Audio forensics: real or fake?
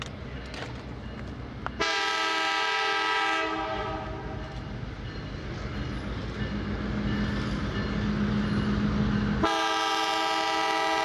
real